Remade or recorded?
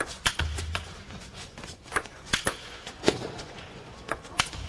remade